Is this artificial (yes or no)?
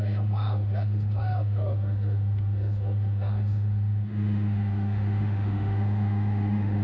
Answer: yes